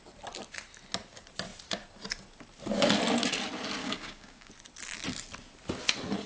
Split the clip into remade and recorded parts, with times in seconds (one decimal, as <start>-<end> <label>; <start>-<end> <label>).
0.0-3.8 recorded; 3.8-4.5 remade; 4.5-6.3 recorded